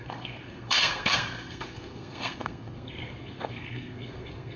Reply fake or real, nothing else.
fake